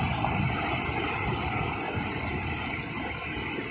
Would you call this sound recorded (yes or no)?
yes